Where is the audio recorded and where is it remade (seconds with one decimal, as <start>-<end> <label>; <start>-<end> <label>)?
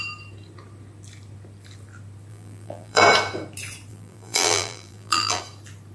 0.0-2.3 recorded; 2.3-3.0 remade; 3.0-3.9 recorded; 3.9-5.4 remade; 5.4-5.9 recorded